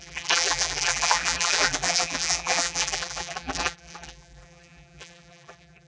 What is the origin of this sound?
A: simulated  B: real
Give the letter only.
A